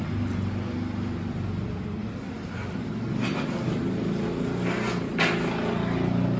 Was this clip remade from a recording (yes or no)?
no